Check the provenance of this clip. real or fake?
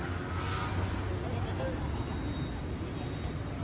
real